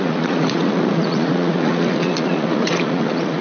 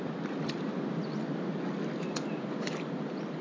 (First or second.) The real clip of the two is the second